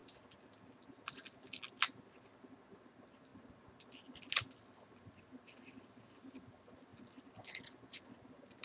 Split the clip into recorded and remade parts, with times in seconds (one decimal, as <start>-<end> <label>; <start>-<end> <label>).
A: 0.0-3.3 recorded; 3.3-5.2 remade; 5.2-8.6 recorded